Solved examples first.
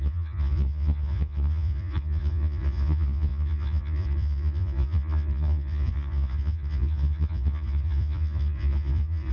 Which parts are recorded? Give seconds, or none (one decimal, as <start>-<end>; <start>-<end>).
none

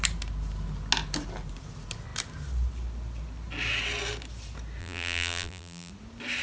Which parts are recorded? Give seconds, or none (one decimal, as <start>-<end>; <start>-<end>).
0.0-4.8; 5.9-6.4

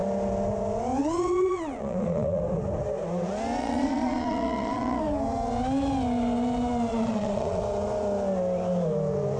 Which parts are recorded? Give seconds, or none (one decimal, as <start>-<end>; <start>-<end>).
0.0-1.0; 2.4-3.6; 5.0-6.9; 7.6-9.4